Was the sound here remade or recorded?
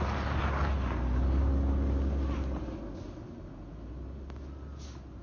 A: recorded